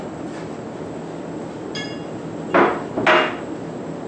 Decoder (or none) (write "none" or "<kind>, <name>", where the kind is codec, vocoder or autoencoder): none